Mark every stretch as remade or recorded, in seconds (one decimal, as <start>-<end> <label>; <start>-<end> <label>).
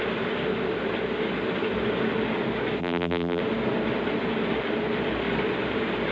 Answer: 0.0-2.8 recorded; 2.8-3.4 remade; 3.4-6.1 recorded